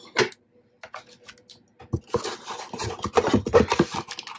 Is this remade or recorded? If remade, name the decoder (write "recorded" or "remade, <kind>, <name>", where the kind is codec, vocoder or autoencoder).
recorded